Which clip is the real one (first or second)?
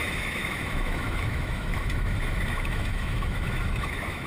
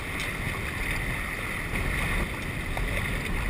second